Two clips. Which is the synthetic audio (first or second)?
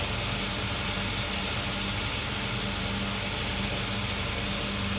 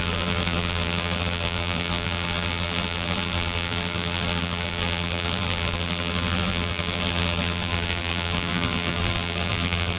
second